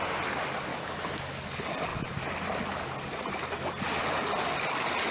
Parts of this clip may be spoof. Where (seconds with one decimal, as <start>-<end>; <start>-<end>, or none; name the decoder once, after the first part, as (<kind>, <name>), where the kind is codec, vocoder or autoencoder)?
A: 0.7-1.4 (autoencoder, DAC-VAE)